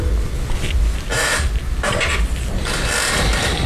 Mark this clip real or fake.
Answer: real